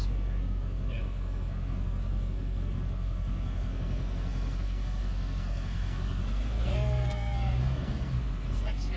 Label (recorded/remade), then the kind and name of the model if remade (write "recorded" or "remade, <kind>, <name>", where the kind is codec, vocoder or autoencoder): remade, codec, SNAC